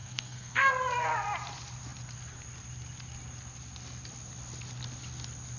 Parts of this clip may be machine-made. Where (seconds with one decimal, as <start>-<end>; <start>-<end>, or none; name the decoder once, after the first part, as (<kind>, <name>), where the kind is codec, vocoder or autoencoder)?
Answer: 0.0-0.7 (codec, SNAC)